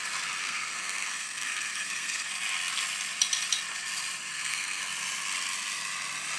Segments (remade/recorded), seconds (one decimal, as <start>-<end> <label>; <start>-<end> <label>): 0.0-0.4 recorded; 0.4-2.3 remade; 2.3-4.3 recorded; 4.3-4.8 remade; 4.8-6.4 recorded